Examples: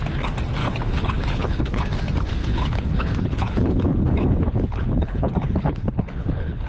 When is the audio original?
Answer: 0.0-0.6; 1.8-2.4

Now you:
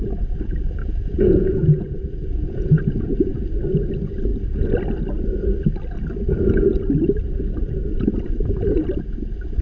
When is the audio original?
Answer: 0.0-0.8; 3.4-9.6

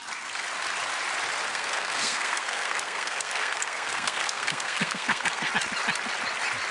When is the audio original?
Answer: 0.0-1.5; 5.5-6.7

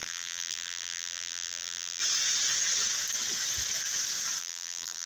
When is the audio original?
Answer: 2.0-4.4

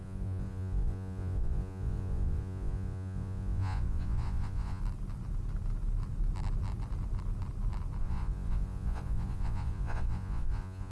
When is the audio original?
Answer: 4.8-8.0